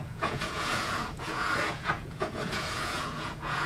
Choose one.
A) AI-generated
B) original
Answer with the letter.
A